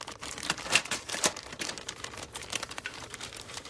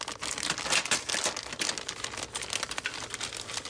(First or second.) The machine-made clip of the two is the first